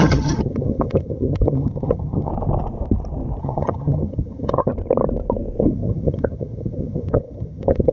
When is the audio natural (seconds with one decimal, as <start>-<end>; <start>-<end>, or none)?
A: 2.3-3.4; 4.7-5.6